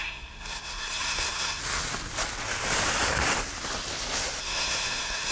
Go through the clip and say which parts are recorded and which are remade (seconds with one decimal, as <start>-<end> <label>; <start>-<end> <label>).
0.0-1.6 remade; 1.6-4.4 recorded; 4.4-5.3 remade